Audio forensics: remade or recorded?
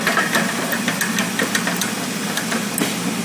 recorded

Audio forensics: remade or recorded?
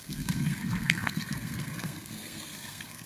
remade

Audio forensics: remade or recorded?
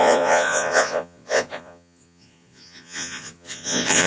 remade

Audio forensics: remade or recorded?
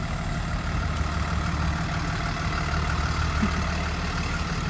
recorded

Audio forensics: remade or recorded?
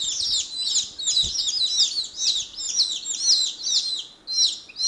recorded